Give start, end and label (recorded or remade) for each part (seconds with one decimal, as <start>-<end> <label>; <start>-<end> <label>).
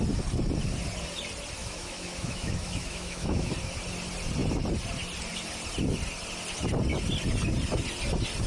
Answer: 0.0-1.6 recorded; 1.6-3.5 remade; 3.5-8.5 recorded